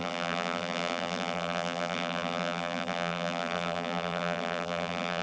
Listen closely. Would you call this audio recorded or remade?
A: remade